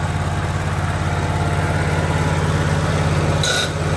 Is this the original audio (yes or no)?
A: yes